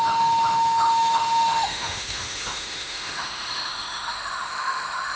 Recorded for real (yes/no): no